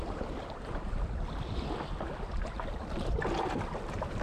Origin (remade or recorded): recorded